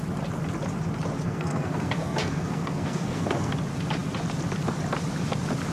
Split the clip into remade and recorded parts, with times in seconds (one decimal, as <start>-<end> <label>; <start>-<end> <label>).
0.0-1.2 recorded; 1.2-3.6 remade; 3.6-5.7 recorded